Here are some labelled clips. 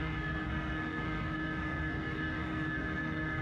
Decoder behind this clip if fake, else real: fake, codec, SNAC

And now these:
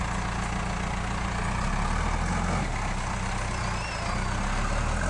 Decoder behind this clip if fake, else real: real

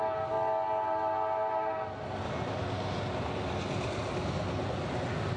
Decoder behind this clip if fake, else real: real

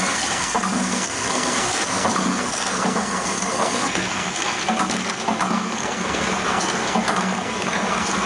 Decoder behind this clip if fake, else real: fake, codec, SNAC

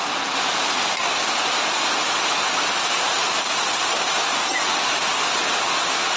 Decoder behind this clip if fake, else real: real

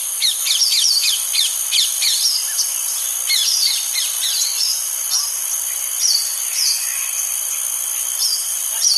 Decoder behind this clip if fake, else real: real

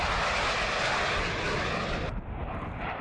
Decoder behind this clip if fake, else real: real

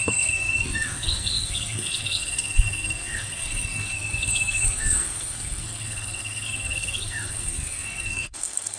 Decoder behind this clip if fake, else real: fake, codec, SNAC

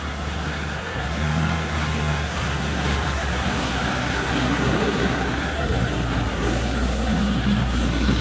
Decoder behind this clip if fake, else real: fake, codec, SNAC